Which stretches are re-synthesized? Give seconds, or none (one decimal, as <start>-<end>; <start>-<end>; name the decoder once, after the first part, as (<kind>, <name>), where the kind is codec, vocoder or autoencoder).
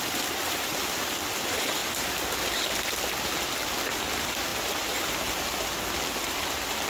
none